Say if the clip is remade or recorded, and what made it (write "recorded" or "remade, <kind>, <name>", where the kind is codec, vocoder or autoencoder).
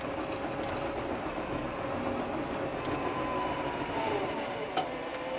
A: recorded